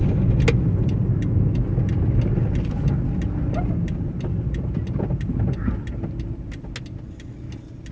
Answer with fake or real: real